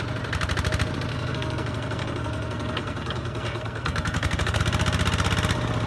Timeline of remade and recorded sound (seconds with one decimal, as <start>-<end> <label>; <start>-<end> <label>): 0.0-1.1 recorded; 1.1-4.6 remade; 4.6-5.9 recorded